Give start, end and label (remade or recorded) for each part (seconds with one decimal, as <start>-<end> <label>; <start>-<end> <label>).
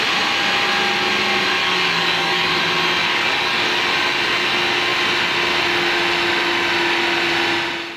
0.0-1.6 recorded; 1.6-2.6 remade; 2.6-3.0 recorded; 3.0-3.8 remade; 3.8-8.0 recorded